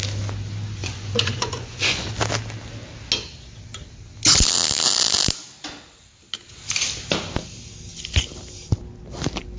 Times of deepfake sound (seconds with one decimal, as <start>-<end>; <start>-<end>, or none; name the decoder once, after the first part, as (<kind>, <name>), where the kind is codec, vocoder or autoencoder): 0.8-2.1 (vocoder, Vocos)